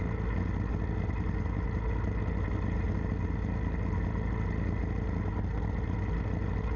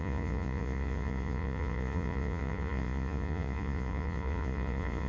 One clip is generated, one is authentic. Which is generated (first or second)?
second